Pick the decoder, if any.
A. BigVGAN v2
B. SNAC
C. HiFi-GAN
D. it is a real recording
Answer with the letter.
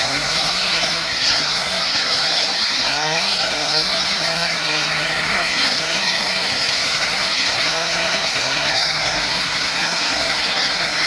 B